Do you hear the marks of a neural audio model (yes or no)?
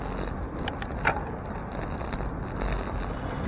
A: no